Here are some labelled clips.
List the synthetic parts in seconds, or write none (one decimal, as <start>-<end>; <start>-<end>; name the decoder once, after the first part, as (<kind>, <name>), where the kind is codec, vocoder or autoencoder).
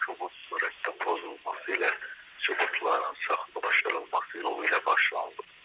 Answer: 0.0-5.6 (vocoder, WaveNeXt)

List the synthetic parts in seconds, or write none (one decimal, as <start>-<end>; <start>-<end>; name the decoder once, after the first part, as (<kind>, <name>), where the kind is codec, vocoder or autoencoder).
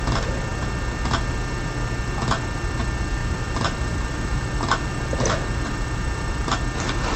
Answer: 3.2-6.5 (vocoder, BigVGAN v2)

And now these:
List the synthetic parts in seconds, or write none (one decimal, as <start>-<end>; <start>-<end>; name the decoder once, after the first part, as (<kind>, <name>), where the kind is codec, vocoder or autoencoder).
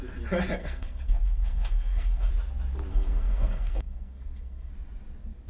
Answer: 0.6-2.3 (codec, SNAC); 2.9-4.7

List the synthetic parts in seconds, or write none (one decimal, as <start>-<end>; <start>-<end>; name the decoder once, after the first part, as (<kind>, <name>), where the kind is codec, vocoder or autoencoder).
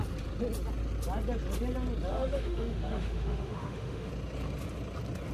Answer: 2.1-4.1 (autoencoder, DAC-VAE)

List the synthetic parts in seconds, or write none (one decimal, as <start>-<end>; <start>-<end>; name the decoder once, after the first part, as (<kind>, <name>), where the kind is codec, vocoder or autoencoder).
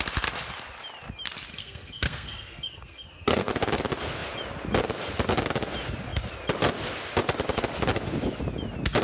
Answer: 1.5-3.5 (codec, SNAC)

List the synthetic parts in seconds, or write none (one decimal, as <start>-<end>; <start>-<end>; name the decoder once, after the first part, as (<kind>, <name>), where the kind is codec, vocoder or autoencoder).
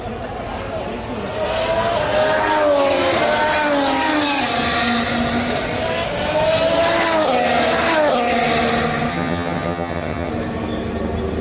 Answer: 9.1-10.3 (vocoder, HiFi-GAN)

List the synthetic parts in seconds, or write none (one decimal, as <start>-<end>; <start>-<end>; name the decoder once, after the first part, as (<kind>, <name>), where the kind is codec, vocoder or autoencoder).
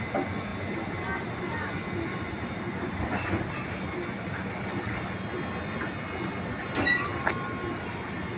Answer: none